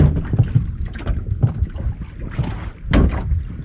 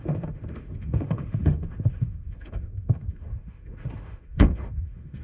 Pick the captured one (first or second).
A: first